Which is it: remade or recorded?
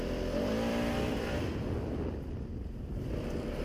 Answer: remade